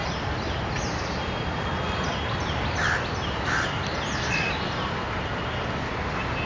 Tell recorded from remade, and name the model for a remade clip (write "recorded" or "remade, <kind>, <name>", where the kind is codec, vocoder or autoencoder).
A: recorded